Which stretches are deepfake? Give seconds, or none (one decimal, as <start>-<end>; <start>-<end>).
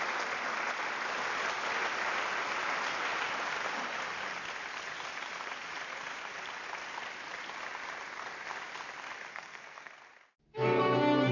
9.3-9.9